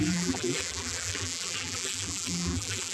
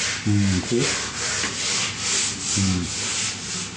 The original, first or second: second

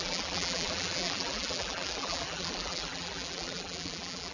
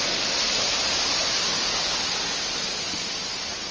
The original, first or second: second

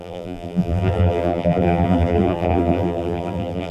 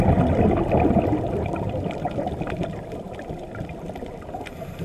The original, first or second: second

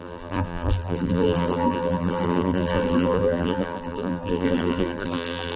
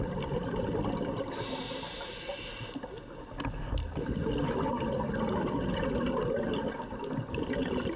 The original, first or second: second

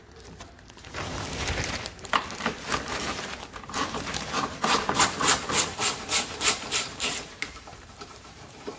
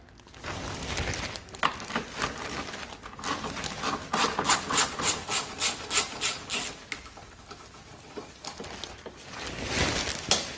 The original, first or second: second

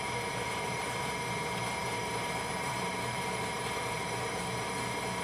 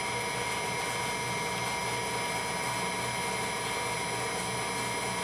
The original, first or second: second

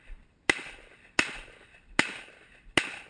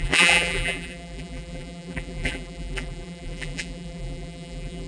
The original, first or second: first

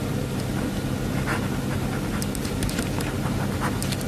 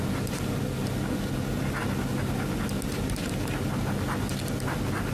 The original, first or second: second